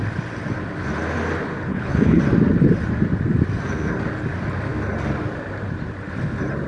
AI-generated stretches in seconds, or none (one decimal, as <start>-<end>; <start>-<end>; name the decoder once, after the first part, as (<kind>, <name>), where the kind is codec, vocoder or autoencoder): 1.7-2.2 (codec, HILCodec)